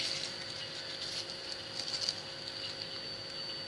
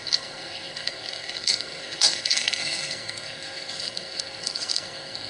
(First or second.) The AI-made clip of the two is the second